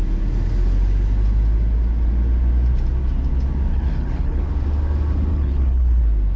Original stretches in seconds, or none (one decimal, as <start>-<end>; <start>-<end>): 0.0-3.7; 4.5-5.3; 6.0-6.4